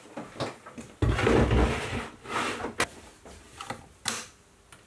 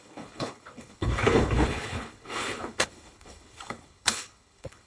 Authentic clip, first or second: first